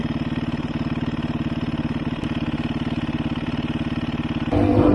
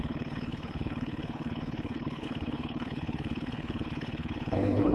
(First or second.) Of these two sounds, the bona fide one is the first